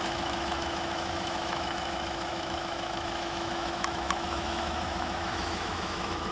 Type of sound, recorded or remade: remade